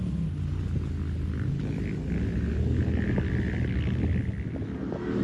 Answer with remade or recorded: recorded